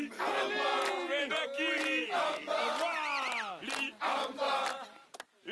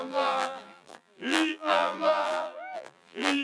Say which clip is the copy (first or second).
second